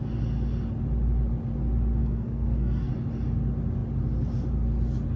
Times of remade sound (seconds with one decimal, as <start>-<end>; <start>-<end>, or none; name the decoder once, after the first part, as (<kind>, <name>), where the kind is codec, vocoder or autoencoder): 2.0-2.9 (codec, SNAC)